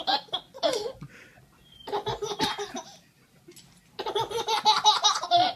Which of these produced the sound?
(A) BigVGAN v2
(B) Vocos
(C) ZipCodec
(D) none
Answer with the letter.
D